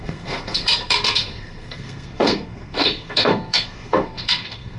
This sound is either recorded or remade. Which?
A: remade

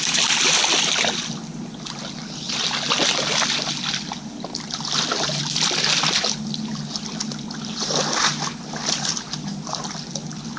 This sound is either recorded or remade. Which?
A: recorded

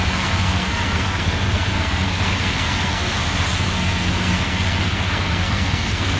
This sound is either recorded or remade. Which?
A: remade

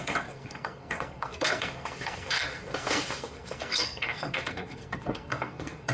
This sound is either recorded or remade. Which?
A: remade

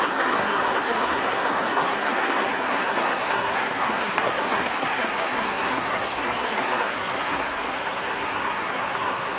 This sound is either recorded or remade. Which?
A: remade